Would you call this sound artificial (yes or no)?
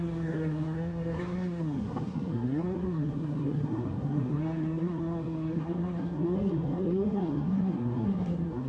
yes